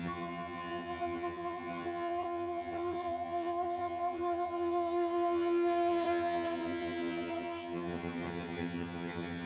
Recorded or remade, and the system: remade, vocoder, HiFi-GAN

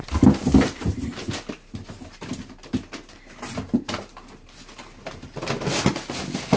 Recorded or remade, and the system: recorded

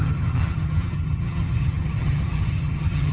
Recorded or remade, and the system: remade, vocoder, HiFi-GAN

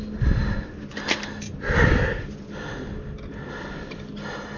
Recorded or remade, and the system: recorded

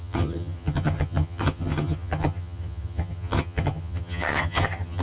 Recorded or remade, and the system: remade, vocoder, HiFi-GAN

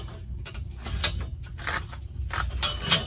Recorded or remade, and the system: recorded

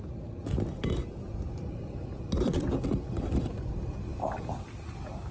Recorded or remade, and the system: recorded